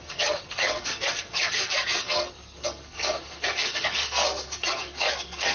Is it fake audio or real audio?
fake